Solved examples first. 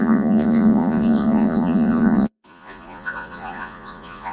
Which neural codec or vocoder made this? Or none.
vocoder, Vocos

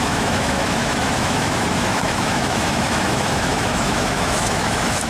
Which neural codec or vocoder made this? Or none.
autoencoder, DAC-VAE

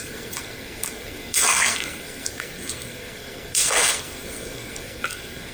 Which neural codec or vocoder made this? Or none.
codec, SNAC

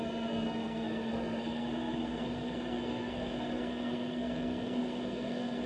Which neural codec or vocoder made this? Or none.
codec, SNAC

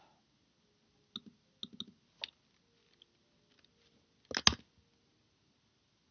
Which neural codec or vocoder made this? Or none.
none